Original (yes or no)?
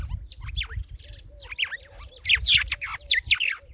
yes